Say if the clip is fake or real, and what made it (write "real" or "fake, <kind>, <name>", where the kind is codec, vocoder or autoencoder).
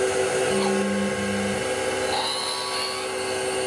real